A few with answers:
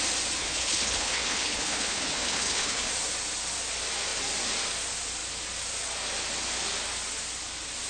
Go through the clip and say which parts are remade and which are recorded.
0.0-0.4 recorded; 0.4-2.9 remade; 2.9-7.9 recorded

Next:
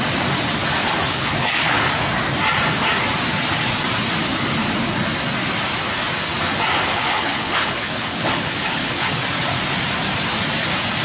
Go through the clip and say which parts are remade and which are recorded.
0.0-0.8 recorded; 0.8-1.9 remade; 1.9-6.9 recorded; 6.9-9.2 remade; 9.2-11.0 recorded

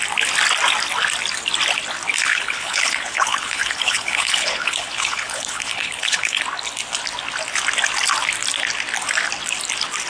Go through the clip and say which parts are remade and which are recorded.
0.0-2.3 recorded; 2.3-6.4 remade; 6.4-10.1 recorded

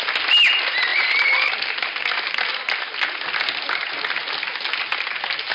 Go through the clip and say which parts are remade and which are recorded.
0.0-5.5 recorded